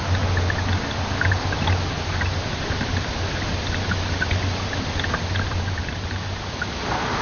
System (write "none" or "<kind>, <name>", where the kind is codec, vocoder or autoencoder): none